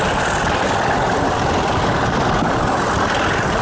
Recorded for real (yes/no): yes